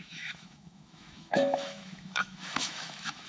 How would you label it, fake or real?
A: fake